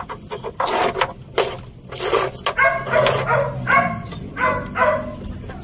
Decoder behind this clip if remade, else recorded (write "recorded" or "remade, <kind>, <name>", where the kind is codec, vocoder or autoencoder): recorded